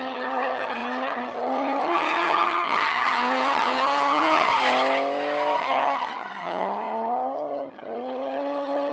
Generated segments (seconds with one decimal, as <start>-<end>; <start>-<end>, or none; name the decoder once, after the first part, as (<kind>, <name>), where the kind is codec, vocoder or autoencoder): 0.0-4.5 (vocoder, HiFi-GAN); 5.6-8.9